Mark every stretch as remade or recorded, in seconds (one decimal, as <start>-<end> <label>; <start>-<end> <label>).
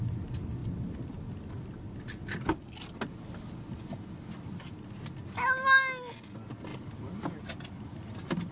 0.0-8.5 recorded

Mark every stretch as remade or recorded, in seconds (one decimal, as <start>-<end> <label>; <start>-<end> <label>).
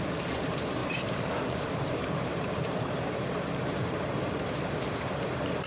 0.0-5.7 remade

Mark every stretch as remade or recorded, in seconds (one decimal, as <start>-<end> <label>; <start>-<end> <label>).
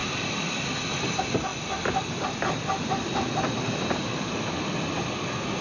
0.0-0.7 remade; 0.7-5.6 recorded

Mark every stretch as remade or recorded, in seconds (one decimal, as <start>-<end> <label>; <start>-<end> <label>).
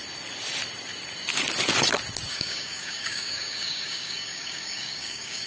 0.0-2.3 recorded; 2.3-5.5 remade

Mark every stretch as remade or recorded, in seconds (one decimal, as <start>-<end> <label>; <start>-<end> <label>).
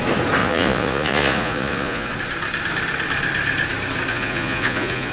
0.0-0.4 recorded; 0.4-2.1 remade; 2.1-4.1 recorded; 4.1-5.1 remade